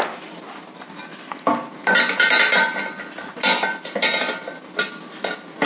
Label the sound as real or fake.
real